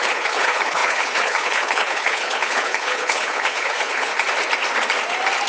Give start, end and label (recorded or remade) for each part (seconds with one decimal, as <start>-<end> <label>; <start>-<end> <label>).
0.0-4.1 remade; 4.1-5.5 recorded